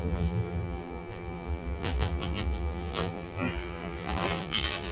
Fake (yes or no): yes